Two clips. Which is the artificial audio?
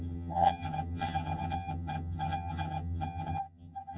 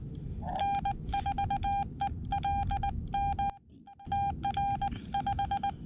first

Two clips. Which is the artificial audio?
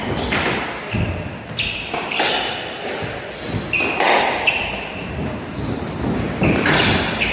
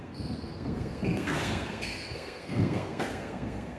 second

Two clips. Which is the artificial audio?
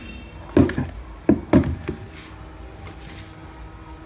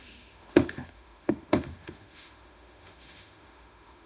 second